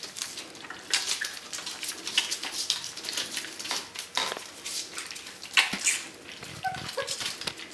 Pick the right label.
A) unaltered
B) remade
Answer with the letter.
A